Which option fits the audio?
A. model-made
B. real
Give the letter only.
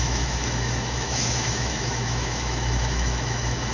A